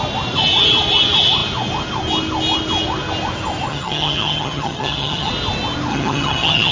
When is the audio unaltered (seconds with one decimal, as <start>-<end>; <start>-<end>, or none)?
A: 0.0-3.7; 5.3-5.9